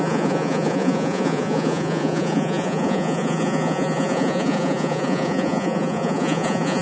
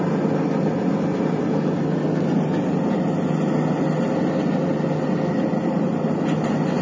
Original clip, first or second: second